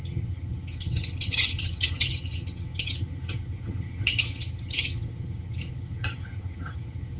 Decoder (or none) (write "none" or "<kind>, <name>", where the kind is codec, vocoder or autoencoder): vocoder, HiFi-GAN